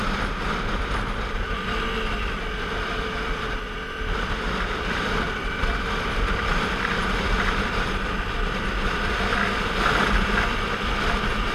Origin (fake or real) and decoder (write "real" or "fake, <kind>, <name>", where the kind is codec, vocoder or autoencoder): fake, vocoder, BigVGAN v2